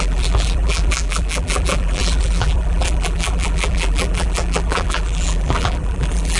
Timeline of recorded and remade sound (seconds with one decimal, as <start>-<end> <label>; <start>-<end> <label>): 0.0-6.4 remade